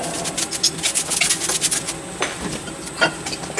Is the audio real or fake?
real